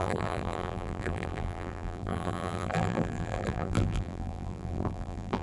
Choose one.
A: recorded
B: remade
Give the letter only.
B